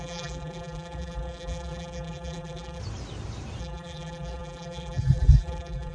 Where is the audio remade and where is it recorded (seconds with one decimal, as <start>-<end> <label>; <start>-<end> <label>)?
0.0-2.8 remade; 2.8-3.6 recorded; 3.6-5.9 remade